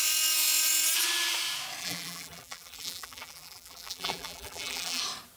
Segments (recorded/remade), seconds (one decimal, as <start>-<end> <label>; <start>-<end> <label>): 0.0-1.8 recorded; 1.8-5.0 remade; 5.0-5.4 recorded